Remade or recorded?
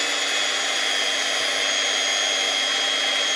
recorded